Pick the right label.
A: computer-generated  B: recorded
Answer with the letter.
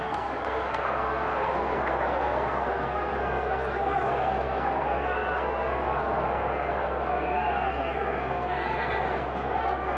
A